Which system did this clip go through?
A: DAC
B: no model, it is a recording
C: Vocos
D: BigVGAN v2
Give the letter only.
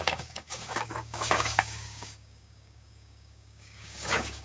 A